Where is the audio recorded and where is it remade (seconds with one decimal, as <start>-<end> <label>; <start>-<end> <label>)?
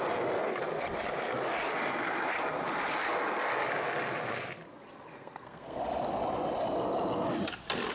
0.0-5.1 recorded; 5.1-5.8 remade; 5.8-7.9 recorded